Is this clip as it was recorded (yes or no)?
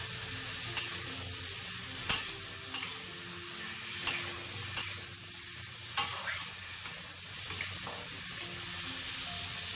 yes